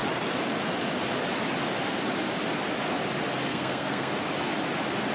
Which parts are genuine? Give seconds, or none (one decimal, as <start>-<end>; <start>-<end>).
0.0-3.5; 4.1-5.1